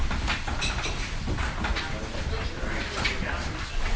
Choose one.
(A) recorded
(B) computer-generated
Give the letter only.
A